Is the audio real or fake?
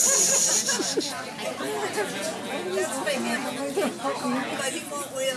real